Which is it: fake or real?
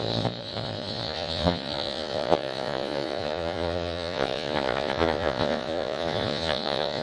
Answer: fake